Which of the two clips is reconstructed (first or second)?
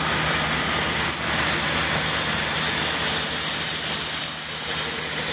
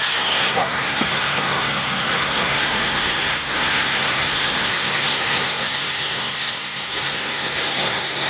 second